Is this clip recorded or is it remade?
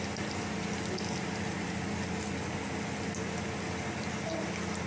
recorded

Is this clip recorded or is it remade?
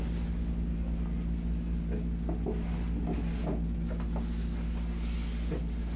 recorded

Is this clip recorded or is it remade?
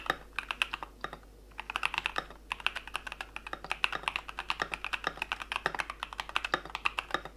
recorded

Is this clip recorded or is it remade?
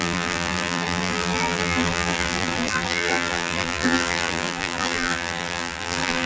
remade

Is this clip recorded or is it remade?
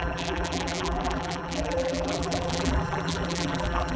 remade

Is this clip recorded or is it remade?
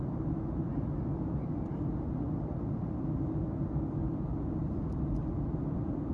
recorded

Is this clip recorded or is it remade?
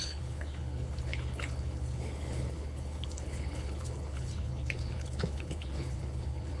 remade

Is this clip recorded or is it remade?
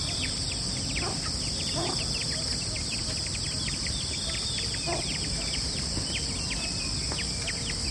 recorded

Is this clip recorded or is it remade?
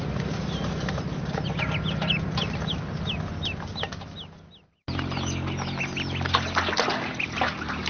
recorded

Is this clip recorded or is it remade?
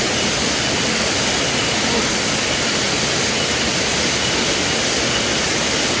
recorded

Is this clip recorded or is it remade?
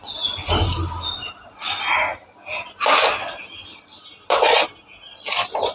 recorded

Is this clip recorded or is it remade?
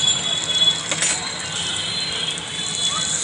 recorded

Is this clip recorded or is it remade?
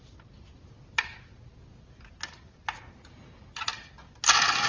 recorded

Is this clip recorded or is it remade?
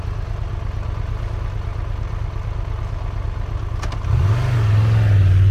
recorded